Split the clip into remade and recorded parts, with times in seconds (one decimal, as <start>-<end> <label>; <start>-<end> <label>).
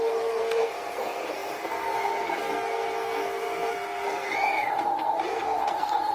0.0-6.1 remade